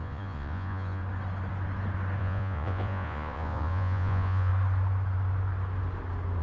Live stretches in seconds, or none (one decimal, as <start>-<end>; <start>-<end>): 1.0-2.2; 4.5-6.4